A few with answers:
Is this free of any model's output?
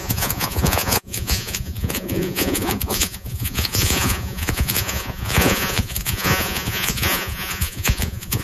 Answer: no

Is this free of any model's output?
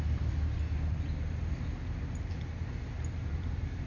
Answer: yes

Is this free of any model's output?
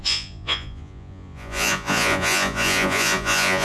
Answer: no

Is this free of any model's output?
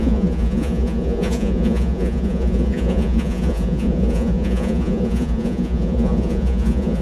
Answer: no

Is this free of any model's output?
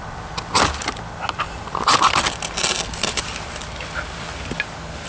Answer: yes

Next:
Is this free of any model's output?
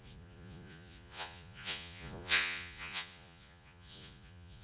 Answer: no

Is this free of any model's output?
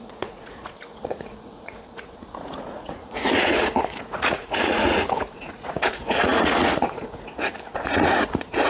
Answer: no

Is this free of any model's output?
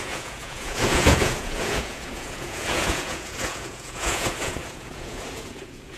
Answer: no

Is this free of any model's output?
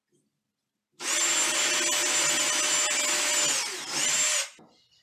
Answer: yes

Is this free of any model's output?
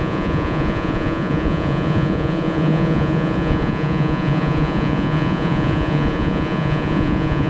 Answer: no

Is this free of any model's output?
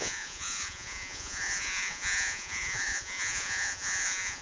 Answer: no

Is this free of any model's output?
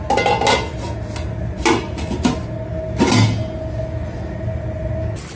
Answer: yes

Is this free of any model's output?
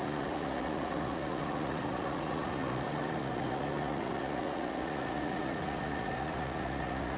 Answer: no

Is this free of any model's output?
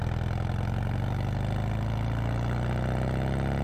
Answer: yes